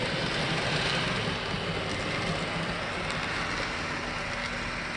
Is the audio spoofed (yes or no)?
no